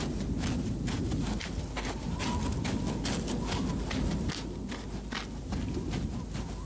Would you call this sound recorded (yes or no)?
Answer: yes